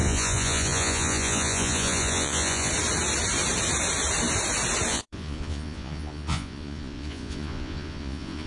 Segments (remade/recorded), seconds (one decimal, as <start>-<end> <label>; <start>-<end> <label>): 0.0-2.7 remade; 2.7-4.9 recorded; 4.9-8.5 remade